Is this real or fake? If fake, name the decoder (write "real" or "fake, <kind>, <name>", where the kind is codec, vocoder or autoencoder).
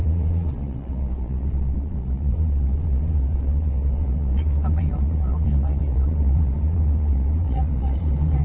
fake, vocoder, Vocos